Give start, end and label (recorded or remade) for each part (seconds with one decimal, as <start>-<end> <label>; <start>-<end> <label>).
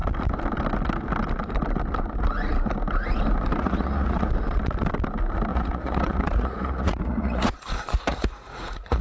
0.0-3.6 recorded; 3.6-4.3 remade; 4.3-5.5 recorded; 5.5-9.0 remade